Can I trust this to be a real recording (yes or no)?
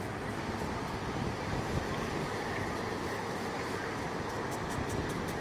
yes